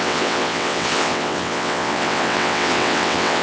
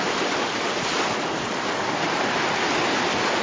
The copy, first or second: first